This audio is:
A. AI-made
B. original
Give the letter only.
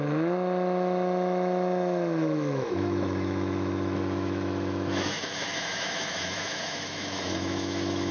A